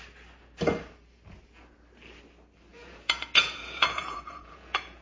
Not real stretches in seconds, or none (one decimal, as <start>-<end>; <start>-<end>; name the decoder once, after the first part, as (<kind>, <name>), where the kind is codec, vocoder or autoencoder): 2.7-5.0 (vocoder, Vocos)